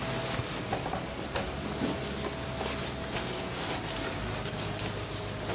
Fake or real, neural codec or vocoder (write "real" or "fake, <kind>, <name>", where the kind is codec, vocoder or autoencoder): real